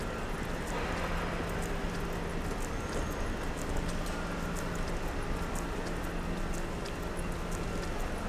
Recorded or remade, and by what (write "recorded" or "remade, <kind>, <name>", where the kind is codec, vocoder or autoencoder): recorded